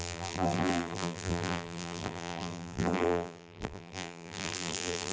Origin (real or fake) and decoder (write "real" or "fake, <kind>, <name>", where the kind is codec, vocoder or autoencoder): fake, vocoder, BigVGAN v2